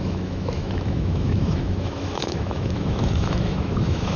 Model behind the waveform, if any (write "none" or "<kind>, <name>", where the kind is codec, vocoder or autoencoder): autoencoder, DAC-VAE